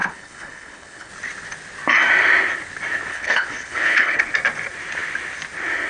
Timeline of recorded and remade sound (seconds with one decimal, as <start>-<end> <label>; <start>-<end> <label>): 0.0-1.1 remade; 1.1-3.1 recorded; 3.1-4.2 remade; 4.2-5.9 recorded